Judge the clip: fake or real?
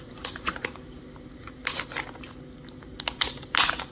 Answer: real